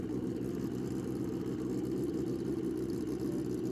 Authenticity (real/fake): real